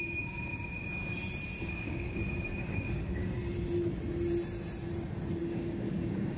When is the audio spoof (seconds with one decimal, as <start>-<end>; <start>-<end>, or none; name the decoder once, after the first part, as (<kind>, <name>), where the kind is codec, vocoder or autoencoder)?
0.0-0.5 (codec, DAC); 1.7-3.2; 5.4-6.4